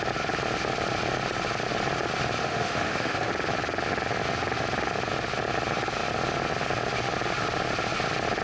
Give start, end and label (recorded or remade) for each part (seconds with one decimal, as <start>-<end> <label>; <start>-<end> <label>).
0.0-2.4 recorded; 2.4-3.3 remade; 3.3-8.4 recorded